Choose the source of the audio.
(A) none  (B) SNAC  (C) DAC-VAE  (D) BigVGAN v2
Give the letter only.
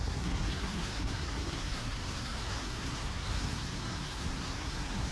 B